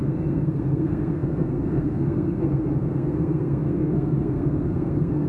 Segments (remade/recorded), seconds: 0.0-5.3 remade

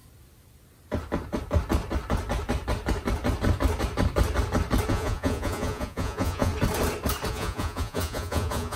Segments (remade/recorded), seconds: 0.0-4.9 recorded; 4.9-6.5 remade; 6.5-7.3 recorded; 7.3-8.8 remade

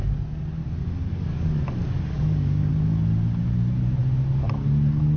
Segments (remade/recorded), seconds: 0.0-0.6 recorded; 0.6-2.7 remade; 2.7-5.2 recorded